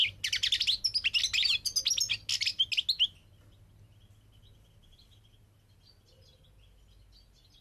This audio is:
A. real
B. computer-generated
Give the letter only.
A